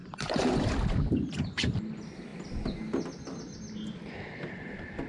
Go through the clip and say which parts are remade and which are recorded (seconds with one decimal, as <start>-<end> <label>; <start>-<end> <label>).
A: 0.0-0.7 remade; 0.7-5.1 recorded